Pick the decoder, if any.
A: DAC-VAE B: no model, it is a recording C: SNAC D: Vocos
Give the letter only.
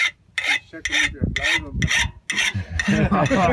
B